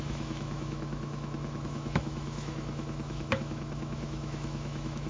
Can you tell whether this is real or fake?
fake